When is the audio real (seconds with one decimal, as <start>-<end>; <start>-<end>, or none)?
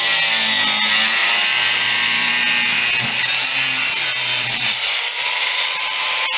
0.0-1.2; 2.3-3.5